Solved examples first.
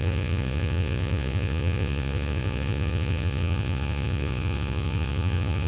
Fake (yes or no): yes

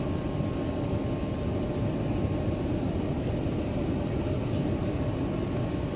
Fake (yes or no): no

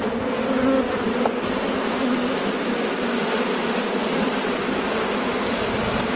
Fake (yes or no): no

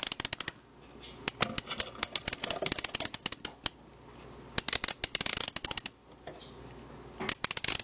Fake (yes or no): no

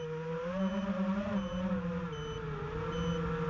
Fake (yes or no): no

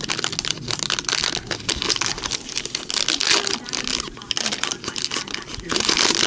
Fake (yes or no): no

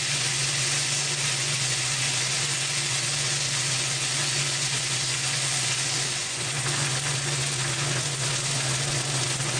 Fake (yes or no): yes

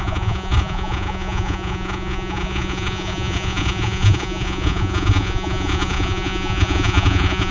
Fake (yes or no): yes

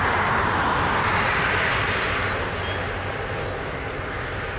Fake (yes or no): no